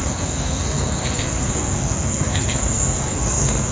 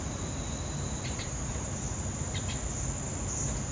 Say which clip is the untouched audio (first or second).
second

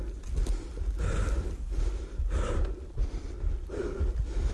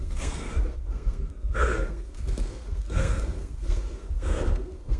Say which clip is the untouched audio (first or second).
first